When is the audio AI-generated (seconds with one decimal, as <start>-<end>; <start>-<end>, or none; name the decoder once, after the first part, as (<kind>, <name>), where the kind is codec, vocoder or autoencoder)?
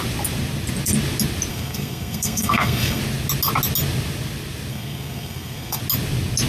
1.5-3.0 (codec, SNAC); 4.7-5.8